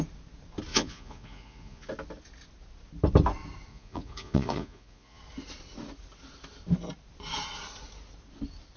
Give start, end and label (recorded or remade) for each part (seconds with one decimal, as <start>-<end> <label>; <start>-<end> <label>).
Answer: 0.0-0.7 recorded; 0.7-1.9 remade; 1.9-3.7 recorded; 3.7-5.2 remade; 5.2-8.8 recorded

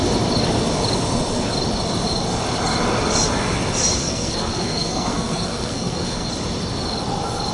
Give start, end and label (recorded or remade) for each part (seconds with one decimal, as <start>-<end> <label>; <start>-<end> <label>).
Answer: 0.0-4.0 recorded; 4.0-6.3 remade; 6.3-7.5 recorded

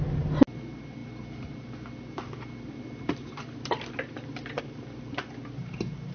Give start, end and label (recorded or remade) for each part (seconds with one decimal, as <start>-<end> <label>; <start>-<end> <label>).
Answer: 0.0-6.1 recorded